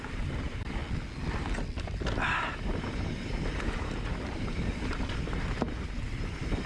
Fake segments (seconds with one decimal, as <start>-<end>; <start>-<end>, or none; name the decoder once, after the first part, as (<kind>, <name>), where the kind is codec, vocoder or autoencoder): 0.0-0.8 (vocoder, BigVGAN v2); 2.5-6.7